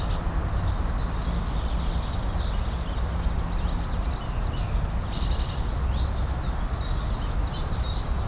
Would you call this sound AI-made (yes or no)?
no